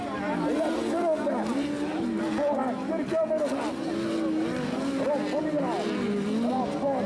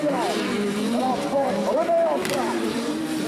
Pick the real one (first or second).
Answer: first